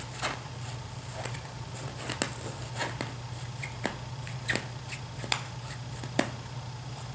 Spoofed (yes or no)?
no